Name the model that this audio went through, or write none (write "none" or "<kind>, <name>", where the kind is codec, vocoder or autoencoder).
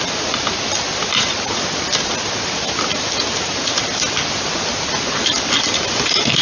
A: none